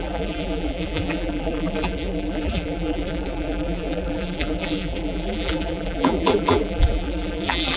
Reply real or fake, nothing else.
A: fake